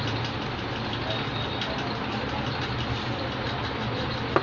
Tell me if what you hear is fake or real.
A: real